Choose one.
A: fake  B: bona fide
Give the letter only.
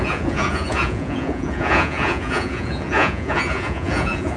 A